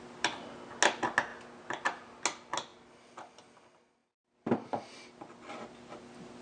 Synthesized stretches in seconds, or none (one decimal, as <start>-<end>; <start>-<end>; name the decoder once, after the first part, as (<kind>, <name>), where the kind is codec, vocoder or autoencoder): none